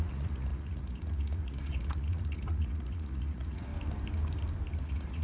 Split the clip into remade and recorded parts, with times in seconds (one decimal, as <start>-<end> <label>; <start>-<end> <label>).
0.0-3.7 remade; 3.7-4.8 recorded; 4.8-5.2 remade